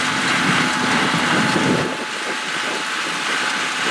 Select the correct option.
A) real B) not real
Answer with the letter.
A